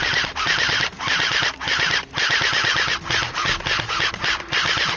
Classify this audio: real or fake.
real